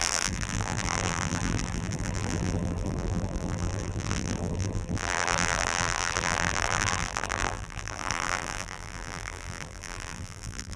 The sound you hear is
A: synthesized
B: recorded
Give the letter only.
A